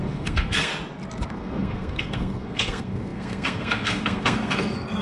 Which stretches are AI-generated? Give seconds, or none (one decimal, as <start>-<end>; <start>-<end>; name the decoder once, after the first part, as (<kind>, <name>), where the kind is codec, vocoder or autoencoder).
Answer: 0.0-0.7 (codec, SNAC); 1.3-5.0